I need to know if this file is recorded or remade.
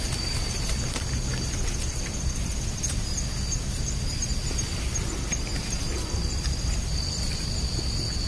recorded